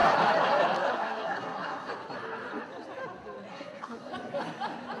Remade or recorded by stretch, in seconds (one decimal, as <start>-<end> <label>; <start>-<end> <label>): 0.0-0.9 recorded; 0.9-1.9 remade; 1.9-3.5 recorded; 3.5-4.1 remade; 4.1-5.0 recorded